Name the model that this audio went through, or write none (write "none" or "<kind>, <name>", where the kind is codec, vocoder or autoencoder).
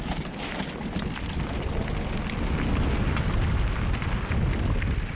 none